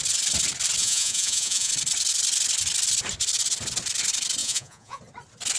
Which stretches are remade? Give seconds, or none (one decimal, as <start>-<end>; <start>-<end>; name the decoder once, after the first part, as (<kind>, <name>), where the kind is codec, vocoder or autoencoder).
0.8-1.7 (vocoder, Vocos); 4.4-5.0